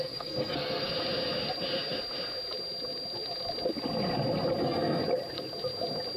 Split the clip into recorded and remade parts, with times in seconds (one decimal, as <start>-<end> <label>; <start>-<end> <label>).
0.0-0.9 remade; 0.9-4.6 recorded; 4.6-5.0 remade; 5.0-6.2 recorded

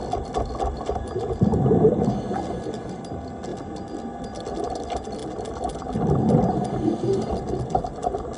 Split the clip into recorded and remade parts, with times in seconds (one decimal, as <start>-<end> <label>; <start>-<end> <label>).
0.0-8.4 recorded

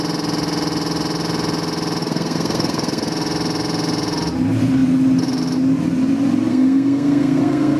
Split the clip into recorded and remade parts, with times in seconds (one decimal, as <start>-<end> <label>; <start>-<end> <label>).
0.0-2.0 recorded; 2.0-3.1 remade; 3.1-6.5 recorded; 6.5-7.8 remade

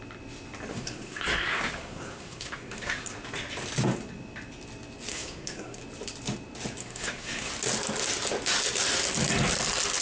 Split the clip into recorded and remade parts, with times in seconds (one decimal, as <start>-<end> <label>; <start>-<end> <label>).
0.0-0.7 recorded; 0.7-3.1 remade; 3.1-5.1 recorded; 5.1-5.8 remade; 5.8-6.8 recorded; 6.8-7.5 remade; 7.5-10.0 recorded

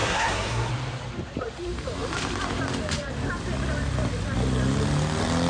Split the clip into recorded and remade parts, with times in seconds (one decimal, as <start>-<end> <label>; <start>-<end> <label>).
0.0-0.7 remade; 0.7-5.5 recorded

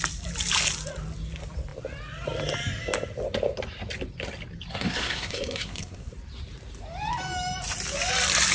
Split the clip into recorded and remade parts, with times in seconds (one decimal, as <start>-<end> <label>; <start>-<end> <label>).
0.0-4.7 recorded; 4.7-6.1 remade; 6.1-8.5 recorded

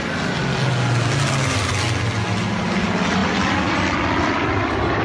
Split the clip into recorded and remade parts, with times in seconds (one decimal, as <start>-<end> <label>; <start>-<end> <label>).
0.0-5.0 recorded

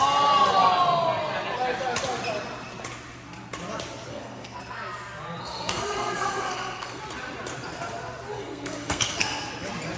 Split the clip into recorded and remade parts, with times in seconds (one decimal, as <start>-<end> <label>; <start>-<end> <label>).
0.0-4.1 recorded; 4.1-4.6 remade; 4.6-5.4 recorded; 5.4-7.0 remade; 7.0-8.3 recorded; 8.3-9.5 remade; 9.5-10.0 recorded